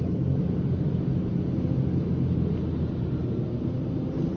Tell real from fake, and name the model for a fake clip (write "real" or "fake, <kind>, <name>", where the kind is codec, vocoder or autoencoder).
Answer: real